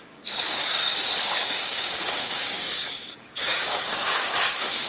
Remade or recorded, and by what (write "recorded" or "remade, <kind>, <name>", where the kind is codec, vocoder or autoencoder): remade, codec, DAC